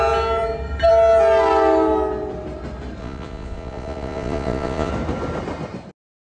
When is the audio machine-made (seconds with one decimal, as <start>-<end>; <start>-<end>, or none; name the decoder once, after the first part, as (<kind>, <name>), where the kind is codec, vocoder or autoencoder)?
3.0-4.9 (vocoder, Vocos)